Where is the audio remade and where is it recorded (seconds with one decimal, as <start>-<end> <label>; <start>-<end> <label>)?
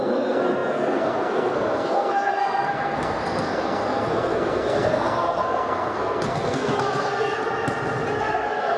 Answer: 0.0-7.4 remade; 7.4-8.2 recorded; 8.2-8.8 remade